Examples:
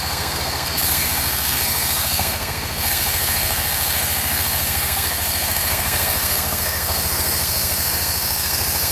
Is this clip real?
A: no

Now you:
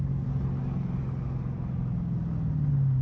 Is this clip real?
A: yes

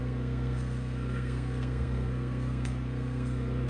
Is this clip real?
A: no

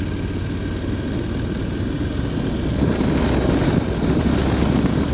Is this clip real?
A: yes